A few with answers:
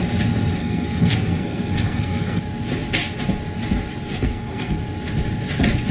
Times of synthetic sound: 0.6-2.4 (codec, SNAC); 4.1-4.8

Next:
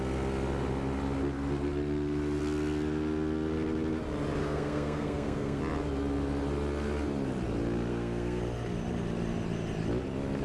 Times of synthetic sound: 4.4-5.6 (codec, SNAC); 7.9-8.4

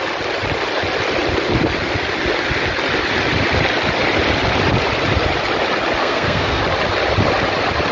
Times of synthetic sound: 6.0-6.6 (codec, SNAC)

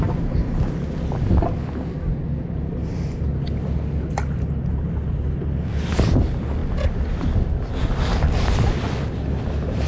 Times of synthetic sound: none

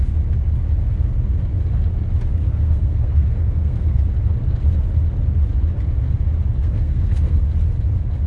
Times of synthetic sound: 2.4-4.0 (codec, SNAC); 6.6-7.4

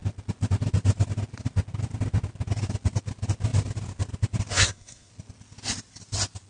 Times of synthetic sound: 4.5-5.1 (codec, SNAC)

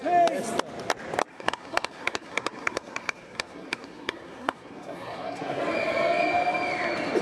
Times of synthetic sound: 1.3-5.6 (codec, SNAC)

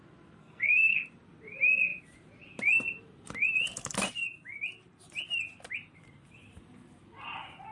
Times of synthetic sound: 0.4-1.0 (codec, SNAC)